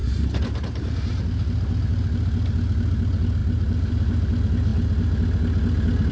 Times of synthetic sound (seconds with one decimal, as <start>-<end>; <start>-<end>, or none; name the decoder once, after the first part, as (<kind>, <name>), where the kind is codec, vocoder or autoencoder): 0.0-0.9 (vocoder, BigVGAN v2)

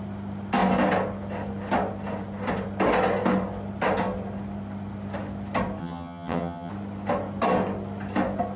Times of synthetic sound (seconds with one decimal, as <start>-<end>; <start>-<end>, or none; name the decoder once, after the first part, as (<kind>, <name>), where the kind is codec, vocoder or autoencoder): 5.8-6.7 (vocoder, HiFi-GAN)

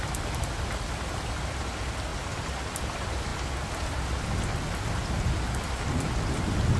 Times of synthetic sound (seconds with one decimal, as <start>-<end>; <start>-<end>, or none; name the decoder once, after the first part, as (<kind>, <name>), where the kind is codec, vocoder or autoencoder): none

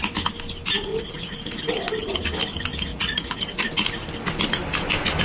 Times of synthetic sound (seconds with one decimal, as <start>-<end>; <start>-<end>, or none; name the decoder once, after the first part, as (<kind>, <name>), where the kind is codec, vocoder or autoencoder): 0.9-1.6 (vocoder, Vocos); 2.9-3.4

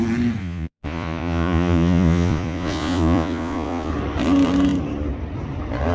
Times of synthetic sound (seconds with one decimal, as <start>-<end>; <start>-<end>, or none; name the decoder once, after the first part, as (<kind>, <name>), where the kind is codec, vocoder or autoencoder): 0.4-3.9 (vocoder, Vocos)